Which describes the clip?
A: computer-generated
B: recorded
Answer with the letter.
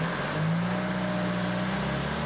B